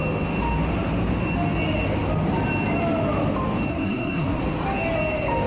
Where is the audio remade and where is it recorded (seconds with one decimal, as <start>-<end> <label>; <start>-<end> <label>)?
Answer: 0.0-3.7 recorded; 3.7-4.4 remade; 4.4-5.5 recorded